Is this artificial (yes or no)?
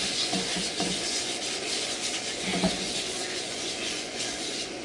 yes